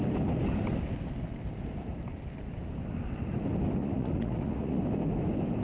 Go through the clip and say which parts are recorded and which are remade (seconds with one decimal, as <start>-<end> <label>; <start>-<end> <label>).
0.0-3.8 recorded; 3.8-4.8 remade; 4.8-5.6 recorded